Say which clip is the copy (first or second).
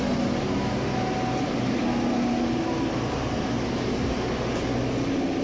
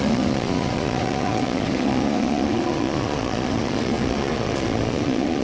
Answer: second